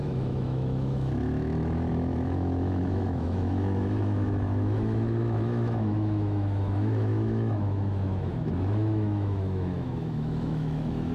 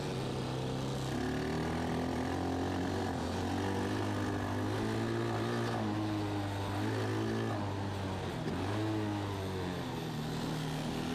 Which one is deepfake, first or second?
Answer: first